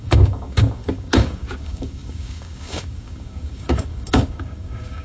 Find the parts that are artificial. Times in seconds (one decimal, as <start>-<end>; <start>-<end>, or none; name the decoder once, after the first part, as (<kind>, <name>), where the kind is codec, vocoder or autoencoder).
0.0-5.0 (codec, DAC)